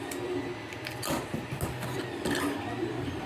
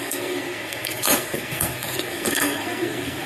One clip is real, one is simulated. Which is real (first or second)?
first